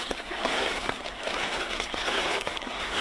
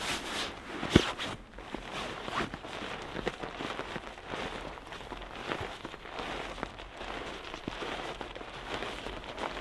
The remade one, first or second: first